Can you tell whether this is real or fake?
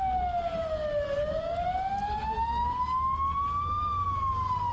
real